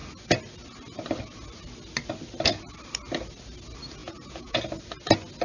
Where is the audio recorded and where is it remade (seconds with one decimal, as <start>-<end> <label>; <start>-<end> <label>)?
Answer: 0.0-4.0 recorded; 4.0-4.6 remade; 4.6-5.4 recorded